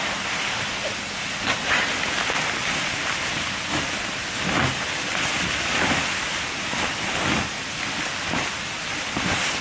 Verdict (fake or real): fake